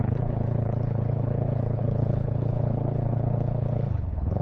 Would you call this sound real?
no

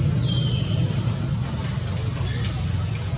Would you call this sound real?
yes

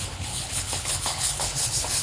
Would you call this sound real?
no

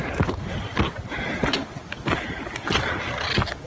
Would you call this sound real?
yes